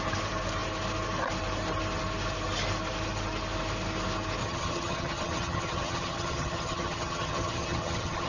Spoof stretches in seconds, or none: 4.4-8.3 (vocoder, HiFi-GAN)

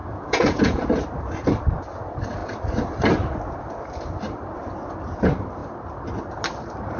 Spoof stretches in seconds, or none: 0.0-0.8 (vocoder, Vocos)

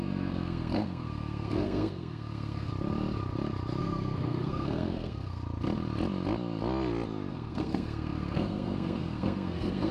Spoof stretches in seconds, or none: 0.0-2.7 (codec, SNAC); 3.8-5.4; 7.3-9.9

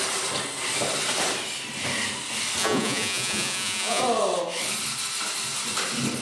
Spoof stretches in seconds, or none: 2.6-4.0 (vocoder, Vocos)

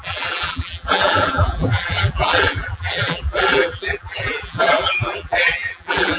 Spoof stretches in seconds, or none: 0.0-6.2 (vocoder, BigVGAN v2)

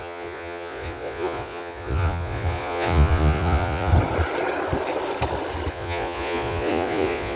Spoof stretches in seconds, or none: 0.0-3.9 (vocoder, Vocos); 5.7-7.4

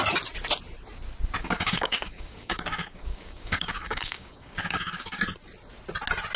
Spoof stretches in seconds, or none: 1.4-5.2 (codec, DAC)

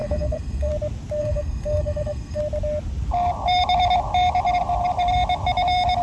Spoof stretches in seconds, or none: 0.0-0.7 (codec, SNAC); 1.2-2.4